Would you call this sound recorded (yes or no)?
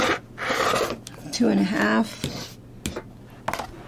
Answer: yes